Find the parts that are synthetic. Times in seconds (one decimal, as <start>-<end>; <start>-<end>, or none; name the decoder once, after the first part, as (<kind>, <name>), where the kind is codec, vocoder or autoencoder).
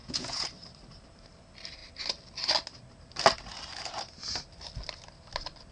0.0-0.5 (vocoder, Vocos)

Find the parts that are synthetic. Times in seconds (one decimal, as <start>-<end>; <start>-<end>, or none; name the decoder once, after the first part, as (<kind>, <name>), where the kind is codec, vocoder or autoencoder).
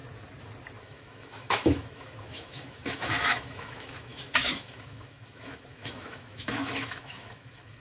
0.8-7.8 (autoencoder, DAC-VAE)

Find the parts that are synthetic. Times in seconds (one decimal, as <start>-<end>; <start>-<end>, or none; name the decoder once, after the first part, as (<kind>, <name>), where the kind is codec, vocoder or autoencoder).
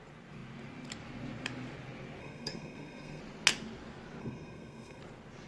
2.2-3.2 (codec, SNAC); 4.2-5.0